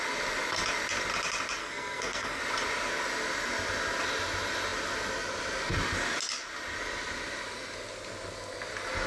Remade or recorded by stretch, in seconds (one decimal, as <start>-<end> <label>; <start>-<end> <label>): 0.0-1.6 recorded; 1.6-2.4 remade; 2.4-9.1 recorded